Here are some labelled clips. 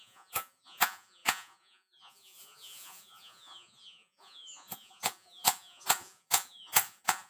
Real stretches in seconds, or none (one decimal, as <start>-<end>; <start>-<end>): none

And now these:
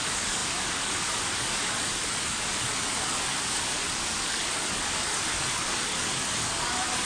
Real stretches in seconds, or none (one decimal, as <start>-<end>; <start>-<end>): none

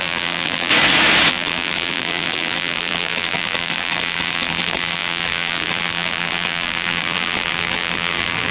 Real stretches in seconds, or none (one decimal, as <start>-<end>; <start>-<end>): 0.7-1.3

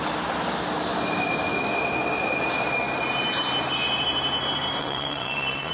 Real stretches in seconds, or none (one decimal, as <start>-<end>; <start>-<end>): 0.0-4.8